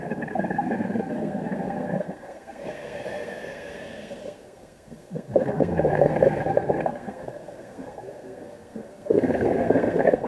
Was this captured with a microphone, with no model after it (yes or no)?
no